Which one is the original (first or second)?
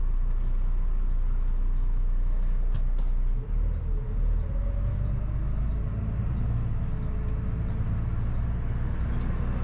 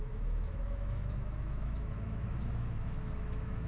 first